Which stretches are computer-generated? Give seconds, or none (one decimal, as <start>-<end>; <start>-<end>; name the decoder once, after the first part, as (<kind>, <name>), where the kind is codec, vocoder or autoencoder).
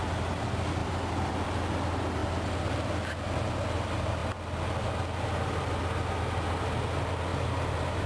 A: 0.8-1.3 (vocoder, BigVGAN v2); 7.3-8.1